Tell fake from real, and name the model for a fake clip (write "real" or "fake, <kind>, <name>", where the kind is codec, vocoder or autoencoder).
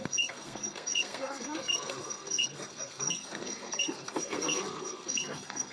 fake, codec, SNAC